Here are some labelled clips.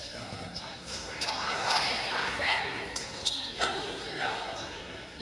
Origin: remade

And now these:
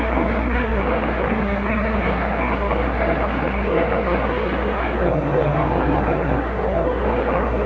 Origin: remade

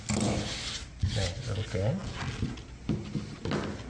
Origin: recorded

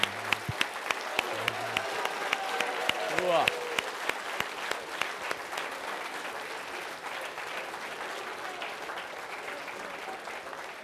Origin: recorded